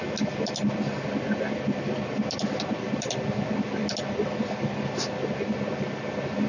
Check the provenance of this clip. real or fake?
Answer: real